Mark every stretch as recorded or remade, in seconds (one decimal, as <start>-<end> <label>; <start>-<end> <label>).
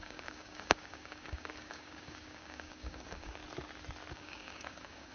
0.0-3.4 remade; 3.4-4.1 recorded; 4.1-5.1 remade